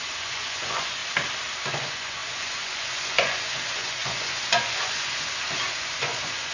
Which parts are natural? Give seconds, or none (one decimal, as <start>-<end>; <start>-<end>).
1.0-1.7